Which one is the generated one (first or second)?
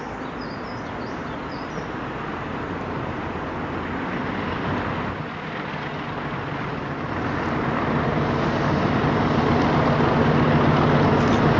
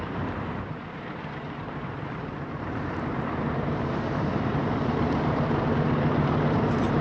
second